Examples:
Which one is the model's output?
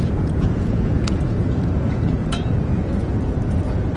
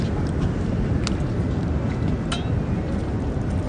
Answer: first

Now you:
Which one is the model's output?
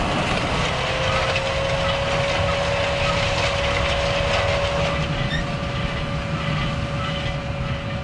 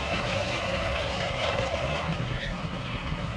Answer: second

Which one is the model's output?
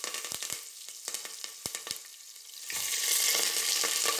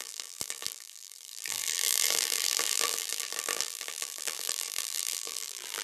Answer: second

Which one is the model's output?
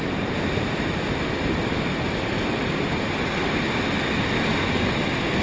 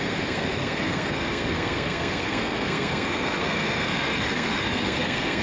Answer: second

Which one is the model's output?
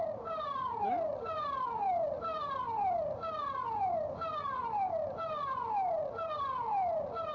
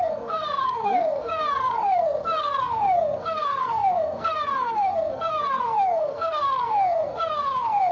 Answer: second